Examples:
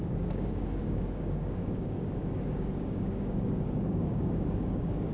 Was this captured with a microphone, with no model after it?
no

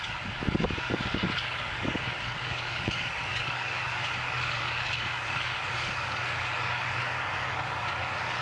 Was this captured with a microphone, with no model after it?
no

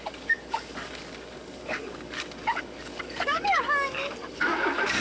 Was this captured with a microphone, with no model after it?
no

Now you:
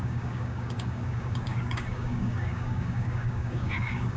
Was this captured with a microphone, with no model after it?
no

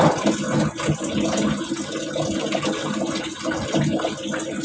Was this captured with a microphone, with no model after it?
yes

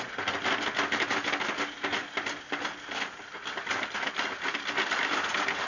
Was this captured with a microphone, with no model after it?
yes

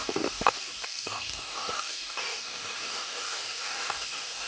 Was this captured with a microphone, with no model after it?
no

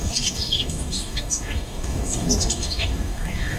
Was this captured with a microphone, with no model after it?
no